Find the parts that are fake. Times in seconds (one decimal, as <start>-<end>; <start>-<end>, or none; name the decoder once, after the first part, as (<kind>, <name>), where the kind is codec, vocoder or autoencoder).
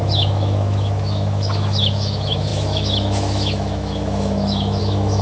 0.0-5.2 (autoencoder, DAC-VAE)